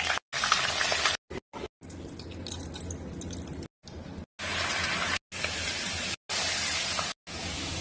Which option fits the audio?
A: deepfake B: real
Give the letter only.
B